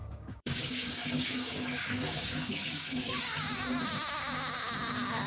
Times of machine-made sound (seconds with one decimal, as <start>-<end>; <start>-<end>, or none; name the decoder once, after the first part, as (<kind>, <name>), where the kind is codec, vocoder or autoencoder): 0.0-3.2 (codec, DAC)